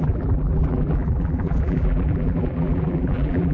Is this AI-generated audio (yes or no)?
yes